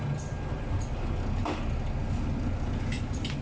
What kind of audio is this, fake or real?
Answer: real